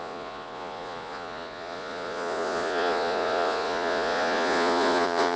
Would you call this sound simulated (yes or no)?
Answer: yes